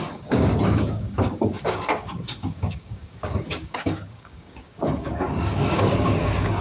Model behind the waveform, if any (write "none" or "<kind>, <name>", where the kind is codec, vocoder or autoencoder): codec, DAC